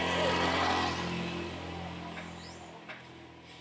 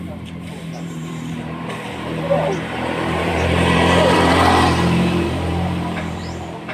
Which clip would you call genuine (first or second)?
first